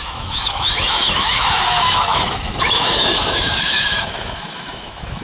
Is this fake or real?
fake